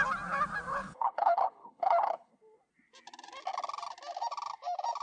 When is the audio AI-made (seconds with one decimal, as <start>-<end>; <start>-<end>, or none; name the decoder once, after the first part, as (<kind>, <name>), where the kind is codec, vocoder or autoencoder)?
0.7-2.3 (codec, HILCodec)